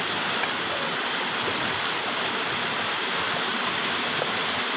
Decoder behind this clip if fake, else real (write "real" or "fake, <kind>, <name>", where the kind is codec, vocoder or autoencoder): real